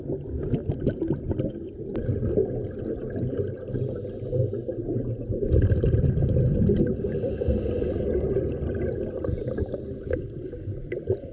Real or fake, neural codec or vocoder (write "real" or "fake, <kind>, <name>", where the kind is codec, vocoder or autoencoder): real